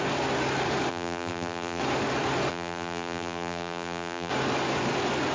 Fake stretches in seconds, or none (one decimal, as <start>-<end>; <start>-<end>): 0.9-1.8; 2.5-4.3